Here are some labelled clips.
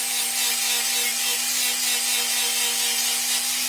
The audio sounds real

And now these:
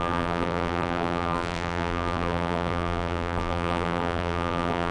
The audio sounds fake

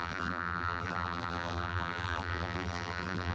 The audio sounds fake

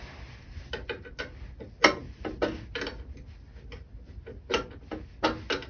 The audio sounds real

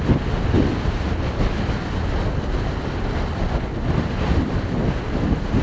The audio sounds real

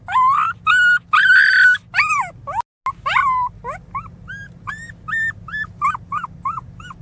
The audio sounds real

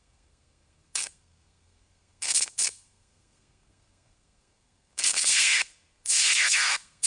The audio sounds fake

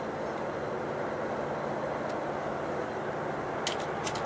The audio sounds real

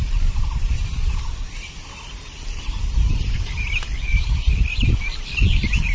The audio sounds real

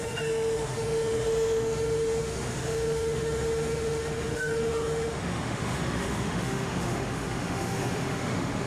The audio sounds fake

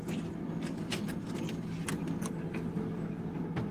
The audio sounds real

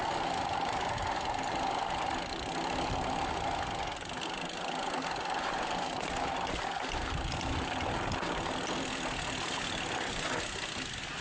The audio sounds real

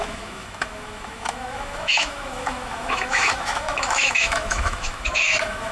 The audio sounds fake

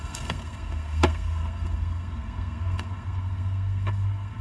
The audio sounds fake